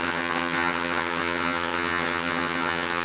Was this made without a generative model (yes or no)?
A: no